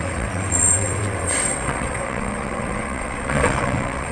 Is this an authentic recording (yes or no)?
no